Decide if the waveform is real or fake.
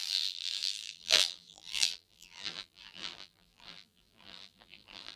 fake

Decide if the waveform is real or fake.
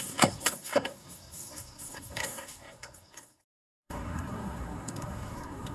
fake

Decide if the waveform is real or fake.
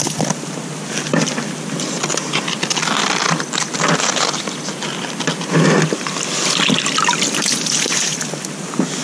real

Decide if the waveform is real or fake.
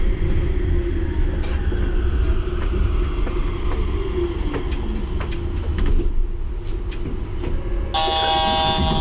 real